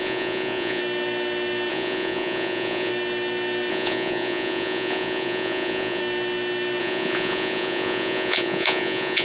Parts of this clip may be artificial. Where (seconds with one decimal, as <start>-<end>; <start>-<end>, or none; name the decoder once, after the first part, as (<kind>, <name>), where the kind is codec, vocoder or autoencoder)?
0.0-0.8 (vocoder, Vocos); 1.7-2.9; 3.7-6.0; 6.8-9.2